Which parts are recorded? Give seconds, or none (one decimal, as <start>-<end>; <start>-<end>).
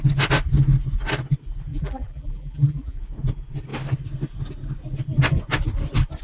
0.0-1.7; 3.0-6.2